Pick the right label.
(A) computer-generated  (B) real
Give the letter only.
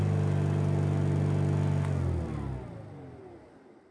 B